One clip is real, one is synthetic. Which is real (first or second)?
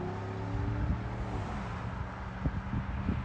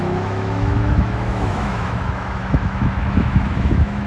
first